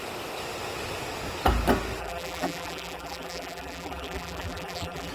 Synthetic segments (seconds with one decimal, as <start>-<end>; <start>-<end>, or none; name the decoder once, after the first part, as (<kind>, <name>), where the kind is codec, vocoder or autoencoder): 2.0-5.1 (vocoder, BigVGAN v2)